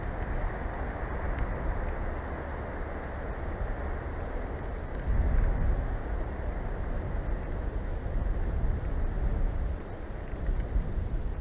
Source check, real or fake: real